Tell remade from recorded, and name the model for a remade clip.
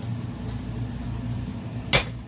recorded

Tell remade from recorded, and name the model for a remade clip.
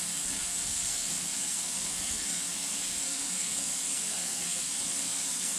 remade, codec, SNAC